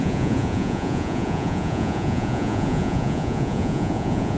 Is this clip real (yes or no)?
no